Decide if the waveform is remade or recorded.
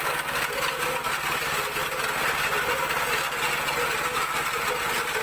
recorded